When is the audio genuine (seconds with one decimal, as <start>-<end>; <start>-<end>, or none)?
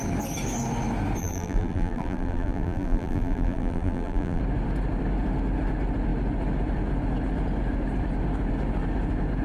0.0-1.2; 4.4-9.4